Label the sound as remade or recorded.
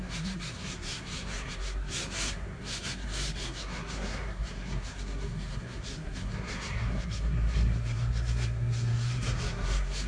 remade